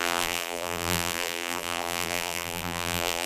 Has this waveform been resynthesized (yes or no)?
yes